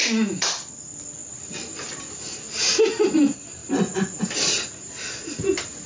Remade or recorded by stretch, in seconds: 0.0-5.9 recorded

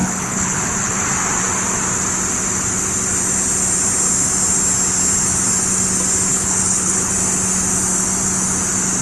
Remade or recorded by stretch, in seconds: 0.0-1.0 remade; 1.0-6.3 recorded; 6.3-7.1 remade; 7.1-9.0 recorded

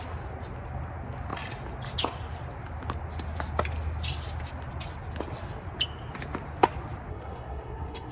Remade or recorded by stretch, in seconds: 0.0-7.1 recorded; 7.1-8.1 remade